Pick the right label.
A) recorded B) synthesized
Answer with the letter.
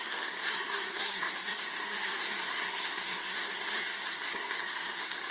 B